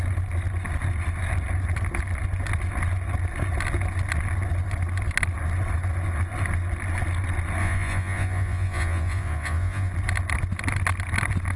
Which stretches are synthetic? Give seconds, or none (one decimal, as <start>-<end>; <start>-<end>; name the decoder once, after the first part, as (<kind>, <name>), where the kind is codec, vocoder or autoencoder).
7.6-9.9 (vocoder, Vocos)